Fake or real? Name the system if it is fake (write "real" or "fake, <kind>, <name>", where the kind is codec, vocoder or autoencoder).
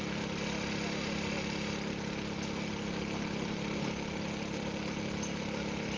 real